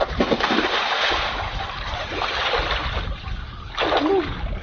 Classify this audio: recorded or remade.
recorded